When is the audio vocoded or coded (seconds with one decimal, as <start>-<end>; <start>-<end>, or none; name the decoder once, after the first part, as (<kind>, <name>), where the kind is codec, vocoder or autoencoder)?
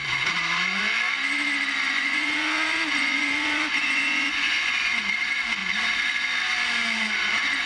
0.0-0.8 (vocoder, Vocos); 1.9-5.0